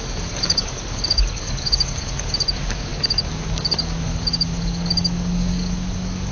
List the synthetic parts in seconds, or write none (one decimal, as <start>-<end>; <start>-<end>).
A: 0.0-6.3